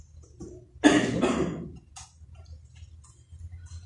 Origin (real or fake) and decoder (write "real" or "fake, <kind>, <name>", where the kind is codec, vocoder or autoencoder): real